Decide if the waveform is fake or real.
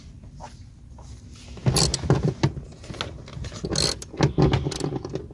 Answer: real